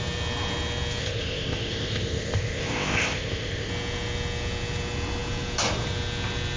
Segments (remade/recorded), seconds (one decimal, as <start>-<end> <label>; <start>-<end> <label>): 0.0-1.0 recorded; 1.0-3.7 remade; 3.7-6.6 recorded